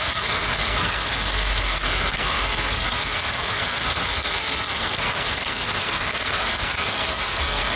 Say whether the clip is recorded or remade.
remade